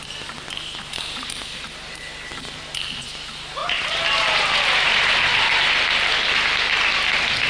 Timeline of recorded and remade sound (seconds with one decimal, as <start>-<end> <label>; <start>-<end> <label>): 0.0-3.6 recorded; 3.6-5.7 remade; 5.7-7.5 recorded